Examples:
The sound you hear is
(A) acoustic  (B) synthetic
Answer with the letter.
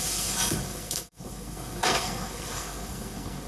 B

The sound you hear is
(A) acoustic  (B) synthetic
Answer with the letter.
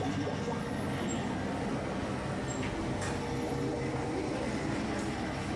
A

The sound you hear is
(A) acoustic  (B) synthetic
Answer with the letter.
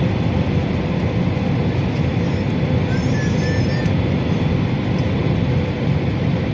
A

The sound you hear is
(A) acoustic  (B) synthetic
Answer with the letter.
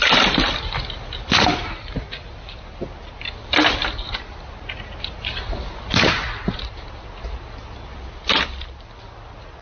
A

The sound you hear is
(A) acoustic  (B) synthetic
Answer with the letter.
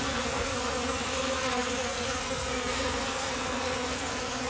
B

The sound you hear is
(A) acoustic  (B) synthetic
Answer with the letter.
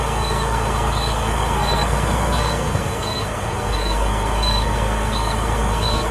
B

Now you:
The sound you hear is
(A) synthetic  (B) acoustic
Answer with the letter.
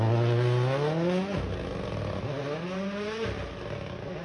B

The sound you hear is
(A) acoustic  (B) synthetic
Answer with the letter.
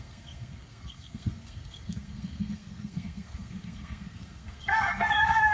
B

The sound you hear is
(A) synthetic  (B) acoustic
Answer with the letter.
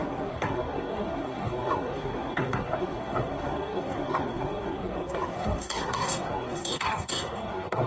A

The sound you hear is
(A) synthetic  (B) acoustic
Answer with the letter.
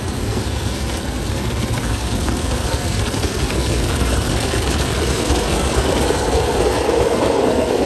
A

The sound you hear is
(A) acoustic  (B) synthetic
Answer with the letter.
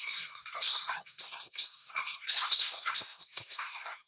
B